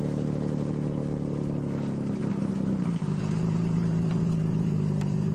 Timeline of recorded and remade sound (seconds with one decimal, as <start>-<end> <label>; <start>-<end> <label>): 0.0-1.0 remade; 1.0-3.2 recorded; 3.2-5.3 remade